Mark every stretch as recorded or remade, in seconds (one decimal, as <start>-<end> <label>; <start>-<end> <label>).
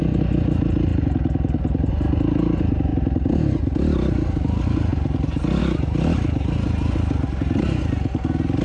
0.0-8.6 recorded